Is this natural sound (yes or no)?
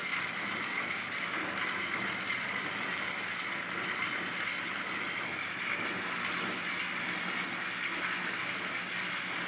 yes